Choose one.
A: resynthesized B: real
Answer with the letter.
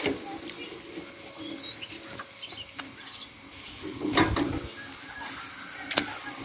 B